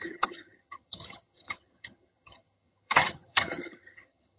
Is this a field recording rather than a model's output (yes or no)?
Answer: no